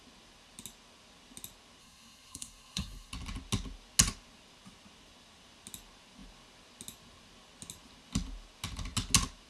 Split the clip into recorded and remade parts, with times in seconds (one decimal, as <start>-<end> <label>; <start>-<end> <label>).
0.0-1.8 recorded; 1.8-3.1 remade; 3.1-9.5 recorded